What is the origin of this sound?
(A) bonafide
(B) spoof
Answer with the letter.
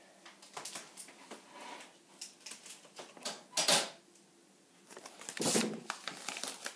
A